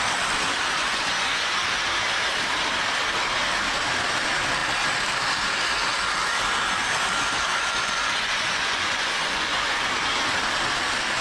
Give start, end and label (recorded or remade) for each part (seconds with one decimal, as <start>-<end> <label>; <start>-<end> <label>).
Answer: 0.0-0.8 recorded; 0.8-1.5 remade; 1.5-7.5 recorded; 7.5-9.9 remade; 9.9-11.2 recorded